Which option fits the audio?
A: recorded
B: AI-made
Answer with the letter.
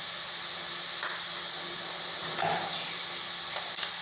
A